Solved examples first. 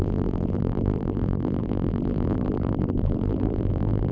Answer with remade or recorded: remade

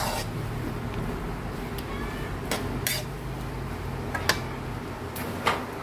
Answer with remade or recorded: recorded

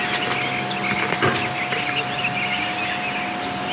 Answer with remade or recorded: recorded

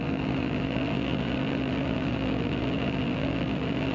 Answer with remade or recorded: remade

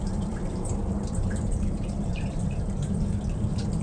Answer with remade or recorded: remade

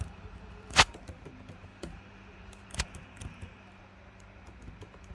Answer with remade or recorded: remade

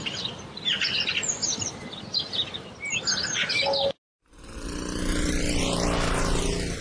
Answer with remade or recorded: recorded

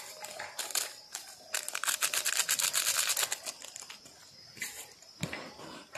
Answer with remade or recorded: recorded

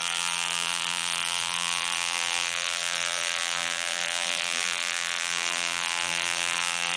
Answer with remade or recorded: remade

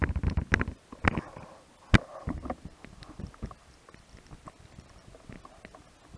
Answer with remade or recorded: recorded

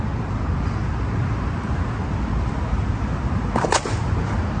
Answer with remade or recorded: recorded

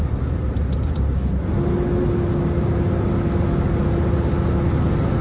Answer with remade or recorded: recorded